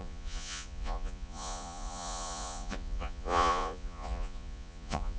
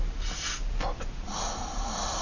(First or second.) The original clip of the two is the second